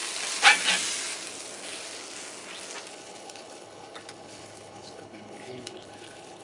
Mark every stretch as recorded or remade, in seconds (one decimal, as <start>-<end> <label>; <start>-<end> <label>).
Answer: 0.0-2.9 recorded; 2.9-6.4 remade